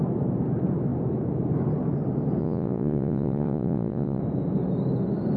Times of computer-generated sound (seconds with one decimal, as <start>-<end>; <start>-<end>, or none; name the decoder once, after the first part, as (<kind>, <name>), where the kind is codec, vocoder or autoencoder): 2.4-4.2 (vocoder, Vocos)